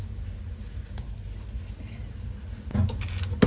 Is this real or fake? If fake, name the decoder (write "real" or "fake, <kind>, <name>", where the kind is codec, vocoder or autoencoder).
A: real